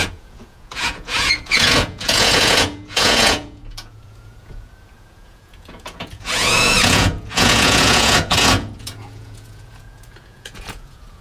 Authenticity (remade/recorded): remade